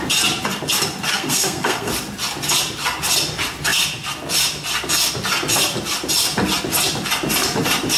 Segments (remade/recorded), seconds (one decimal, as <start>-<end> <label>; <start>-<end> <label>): 0.0-1.1 recorded; 1.1-1.9 remade; 1.9-8.0 recorded